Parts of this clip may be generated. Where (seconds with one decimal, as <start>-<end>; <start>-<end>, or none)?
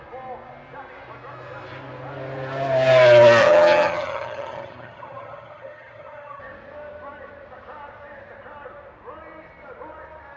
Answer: 3.4-6.4